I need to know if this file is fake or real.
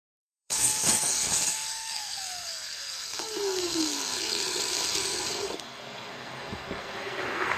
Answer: fake